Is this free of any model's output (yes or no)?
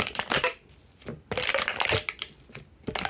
yes